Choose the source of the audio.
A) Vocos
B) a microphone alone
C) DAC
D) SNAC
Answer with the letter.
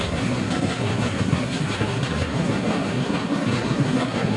D